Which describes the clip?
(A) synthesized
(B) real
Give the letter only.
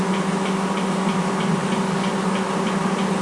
B